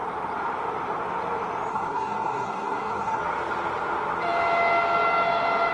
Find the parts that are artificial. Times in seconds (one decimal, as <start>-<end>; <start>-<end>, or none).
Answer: 1.7-3.2